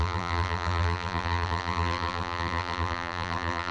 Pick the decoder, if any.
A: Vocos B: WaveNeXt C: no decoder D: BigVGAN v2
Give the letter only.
D